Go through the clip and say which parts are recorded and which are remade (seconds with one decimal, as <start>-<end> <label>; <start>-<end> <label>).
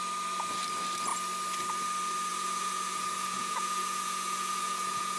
0.0-2.3 recorded; 2.3-5.2 remade